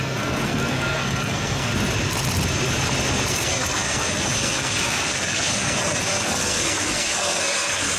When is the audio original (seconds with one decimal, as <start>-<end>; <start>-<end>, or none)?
1.7-3.3